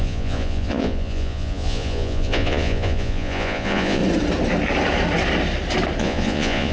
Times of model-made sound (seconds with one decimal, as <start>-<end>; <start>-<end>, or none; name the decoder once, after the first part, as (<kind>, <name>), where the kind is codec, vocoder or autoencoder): 0.0-4.0 (vocoder, Vocos); 6.0-6.7